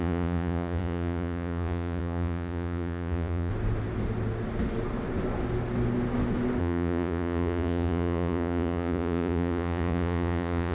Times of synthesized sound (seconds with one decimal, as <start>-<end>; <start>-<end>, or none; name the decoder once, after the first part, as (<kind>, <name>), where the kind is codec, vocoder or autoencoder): 0.0-3.5 (vocoder, Vocos); 6.6-10.7